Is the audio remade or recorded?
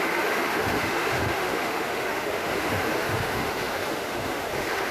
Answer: remade